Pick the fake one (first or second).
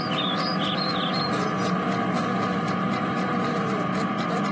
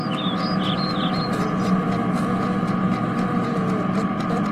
first